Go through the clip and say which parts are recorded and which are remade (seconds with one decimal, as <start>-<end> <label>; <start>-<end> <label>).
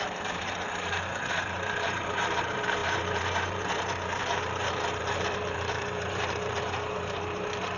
0.0-7.8 remade